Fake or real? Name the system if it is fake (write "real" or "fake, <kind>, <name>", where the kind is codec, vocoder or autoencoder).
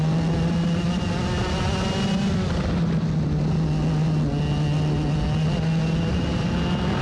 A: real